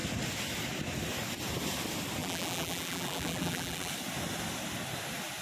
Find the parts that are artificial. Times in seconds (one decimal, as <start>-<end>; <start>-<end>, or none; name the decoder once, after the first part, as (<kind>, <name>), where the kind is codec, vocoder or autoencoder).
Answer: 2.2-3.9 (vocoder, BigVGAN v2)